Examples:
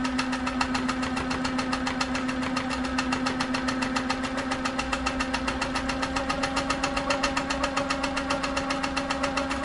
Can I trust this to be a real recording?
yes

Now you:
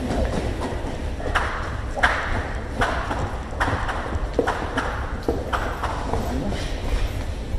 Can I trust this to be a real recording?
yes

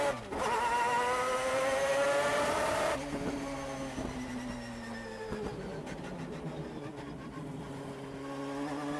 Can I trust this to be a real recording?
yes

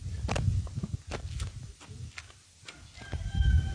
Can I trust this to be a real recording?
yes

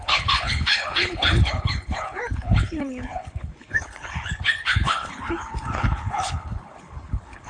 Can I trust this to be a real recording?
no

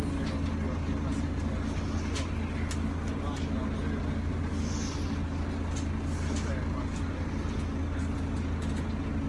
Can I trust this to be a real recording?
yes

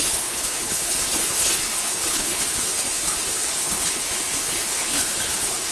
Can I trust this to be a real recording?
no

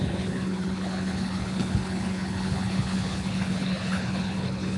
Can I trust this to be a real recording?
no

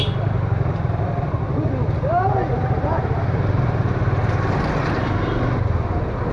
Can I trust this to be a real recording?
yes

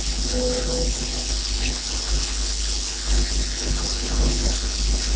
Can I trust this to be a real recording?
no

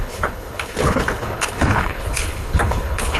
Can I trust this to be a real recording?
no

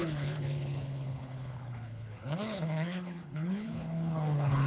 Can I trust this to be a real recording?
no